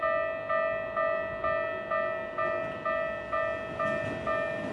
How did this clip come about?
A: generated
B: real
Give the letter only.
B